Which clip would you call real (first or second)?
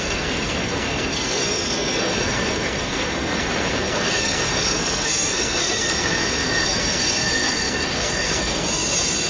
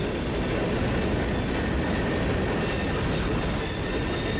second